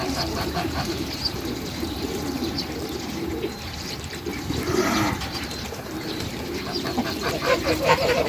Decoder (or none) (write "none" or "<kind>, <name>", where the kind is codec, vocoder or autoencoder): vocoder, BigVGAN v2